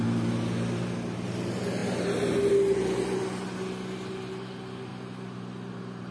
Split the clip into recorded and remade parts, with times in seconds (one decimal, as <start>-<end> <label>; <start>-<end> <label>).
0.0-6.1 recorded